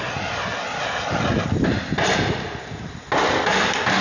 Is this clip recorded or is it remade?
recorded